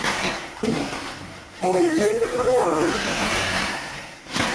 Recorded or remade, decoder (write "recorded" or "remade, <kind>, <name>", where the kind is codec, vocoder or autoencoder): remade, codec, SNAC